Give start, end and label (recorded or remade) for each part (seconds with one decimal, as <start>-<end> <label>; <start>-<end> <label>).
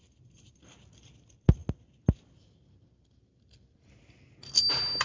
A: 0.0-5.0 recorded